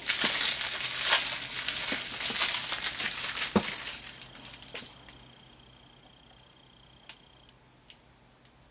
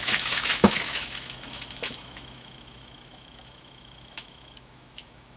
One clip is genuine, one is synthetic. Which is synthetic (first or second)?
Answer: second